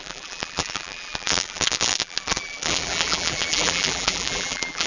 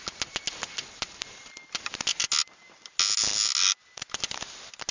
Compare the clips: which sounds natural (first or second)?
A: second